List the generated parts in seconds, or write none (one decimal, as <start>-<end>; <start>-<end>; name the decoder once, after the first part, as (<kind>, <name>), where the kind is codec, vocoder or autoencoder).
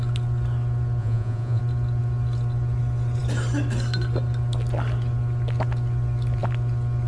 1.0-1.6 (vocoder, Vocos)